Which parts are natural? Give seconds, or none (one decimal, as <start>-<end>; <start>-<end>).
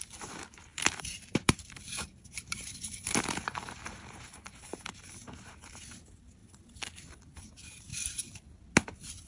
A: 0.0-0.7; 5.7-7.9; 8.6-9.3